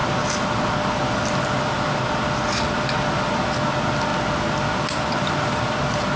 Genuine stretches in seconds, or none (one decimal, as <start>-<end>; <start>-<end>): 0.0-6.2